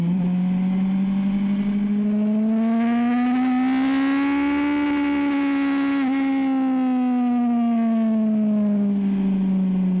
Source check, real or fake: real